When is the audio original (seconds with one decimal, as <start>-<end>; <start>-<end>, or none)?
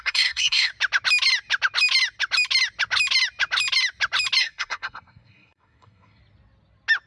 0.7-4.4; 6.2-7.1